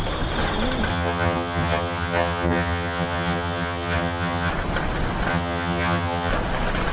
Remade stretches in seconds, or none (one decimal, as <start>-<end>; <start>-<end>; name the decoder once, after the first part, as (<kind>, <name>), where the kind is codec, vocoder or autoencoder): 0.9-4.5 (vocoder, HiFi-GAN); 5.3-6.3